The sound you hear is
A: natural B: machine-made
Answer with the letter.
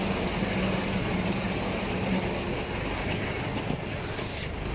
A